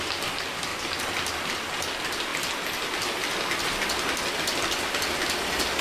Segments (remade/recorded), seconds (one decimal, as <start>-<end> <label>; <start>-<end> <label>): 0.0-5.8 recorded